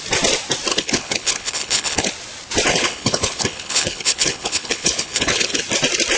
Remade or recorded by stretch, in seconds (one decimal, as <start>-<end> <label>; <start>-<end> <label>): 0.0-0.7 recorded; 0.7-2.1 remade; 2.1-2.7 recorded; 2.7-5.6 remade; 5.6-6.2 recorded